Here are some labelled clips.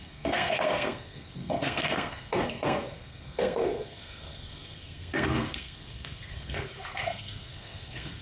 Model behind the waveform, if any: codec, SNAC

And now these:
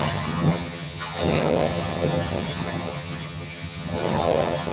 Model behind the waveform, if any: vocoder, HiFi-GAN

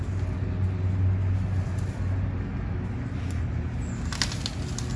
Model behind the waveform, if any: none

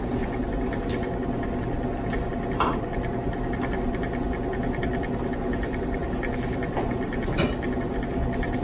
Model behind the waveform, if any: none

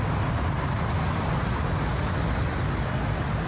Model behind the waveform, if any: none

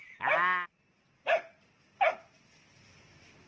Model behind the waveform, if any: none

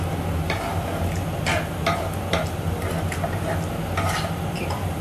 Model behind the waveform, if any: none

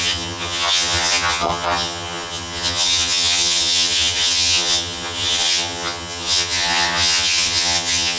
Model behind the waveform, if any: vocoder, HiFi-GAN